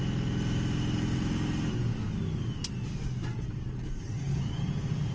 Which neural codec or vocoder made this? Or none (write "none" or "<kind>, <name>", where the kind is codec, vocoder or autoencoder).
none